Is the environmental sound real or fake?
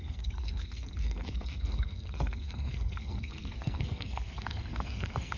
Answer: fake